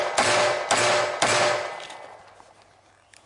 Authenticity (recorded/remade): recorded